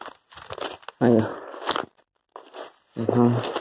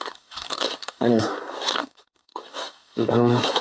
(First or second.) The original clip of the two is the first